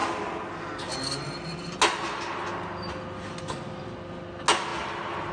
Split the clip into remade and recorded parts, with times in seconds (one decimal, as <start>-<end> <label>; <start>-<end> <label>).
0.0-5.3 recorded